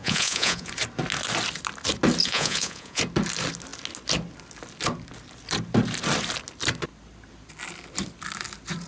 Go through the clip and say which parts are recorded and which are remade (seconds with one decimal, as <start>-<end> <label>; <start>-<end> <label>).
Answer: 0.0-0.7 remade; 0.7-2.2 recorded; 2.2-3.0 remade; 3.0-8.9 recorded